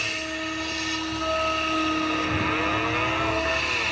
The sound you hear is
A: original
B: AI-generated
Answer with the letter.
A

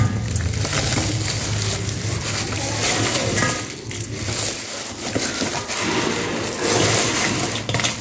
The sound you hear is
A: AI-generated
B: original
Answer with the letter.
B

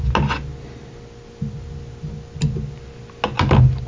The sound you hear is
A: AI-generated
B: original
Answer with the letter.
B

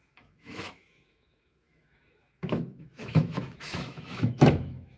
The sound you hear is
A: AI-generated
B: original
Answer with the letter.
A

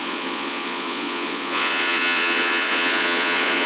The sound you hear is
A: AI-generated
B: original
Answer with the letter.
A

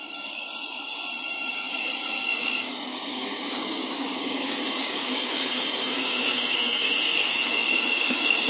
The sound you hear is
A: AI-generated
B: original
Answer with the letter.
A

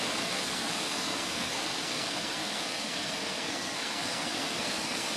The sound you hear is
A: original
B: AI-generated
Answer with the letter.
B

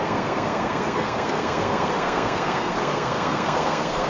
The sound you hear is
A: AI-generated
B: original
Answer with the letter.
A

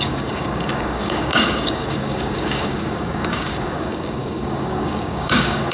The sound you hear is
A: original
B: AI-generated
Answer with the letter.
B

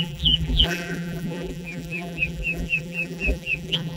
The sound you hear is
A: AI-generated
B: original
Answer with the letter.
A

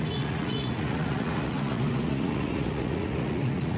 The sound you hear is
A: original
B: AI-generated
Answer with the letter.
B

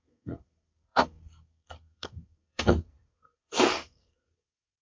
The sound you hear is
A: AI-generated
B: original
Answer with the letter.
A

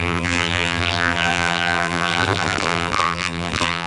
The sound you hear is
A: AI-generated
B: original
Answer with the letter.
A